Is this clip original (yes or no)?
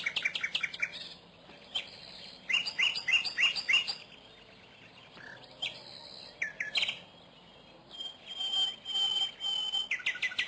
yes